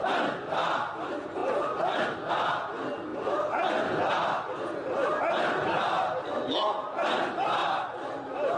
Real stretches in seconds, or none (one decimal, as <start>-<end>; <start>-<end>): 0.0-7.6